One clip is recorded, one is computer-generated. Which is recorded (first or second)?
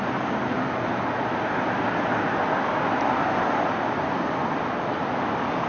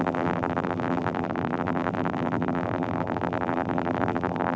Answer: first